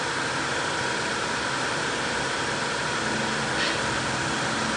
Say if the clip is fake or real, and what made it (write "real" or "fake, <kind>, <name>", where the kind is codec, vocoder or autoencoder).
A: real